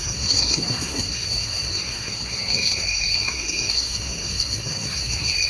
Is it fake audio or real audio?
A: fake